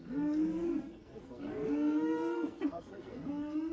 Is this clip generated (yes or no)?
yes